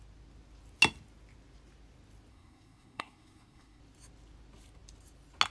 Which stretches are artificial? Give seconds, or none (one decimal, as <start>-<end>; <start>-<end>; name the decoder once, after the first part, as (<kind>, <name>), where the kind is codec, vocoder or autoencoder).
2.3-3.8 (codec, SNAC)